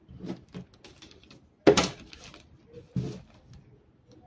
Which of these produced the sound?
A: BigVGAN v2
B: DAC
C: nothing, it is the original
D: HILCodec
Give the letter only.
C